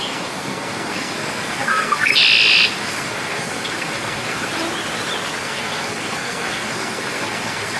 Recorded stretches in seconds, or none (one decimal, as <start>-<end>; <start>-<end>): 2.1-2.8; 4.5-5.4